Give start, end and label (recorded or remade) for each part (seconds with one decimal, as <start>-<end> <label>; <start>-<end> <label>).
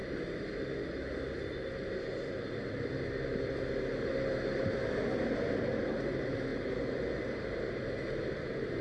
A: 0.0-8.8 recorded